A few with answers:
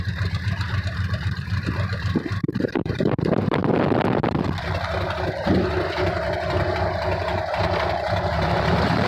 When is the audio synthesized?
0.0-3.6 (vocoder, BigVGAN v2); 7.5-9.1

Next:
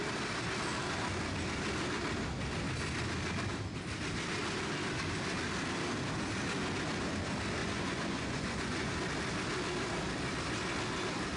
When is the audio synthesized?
7.6-8.9 (vocoder, Vocos)

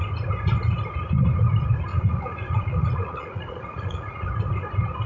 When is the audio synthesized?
1.9-4.3 (vocoder, Vocos)

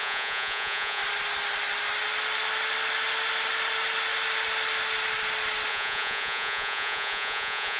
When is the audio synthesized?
0.0-1.0 (vocoder, Vocos); 5.7-7.8

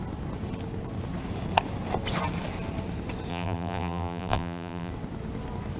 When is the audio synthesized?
3.3-4.9 (vocoder, BigVGAN v2)

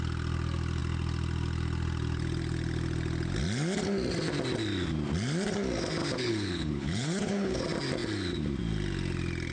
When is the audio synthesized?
6.0-7.6 (codec, HILCodec)

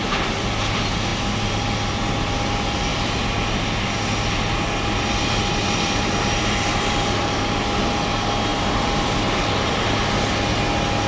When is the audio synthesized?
2.9-7.4 (vocoder, BigVGAN v2); 8.5-10.3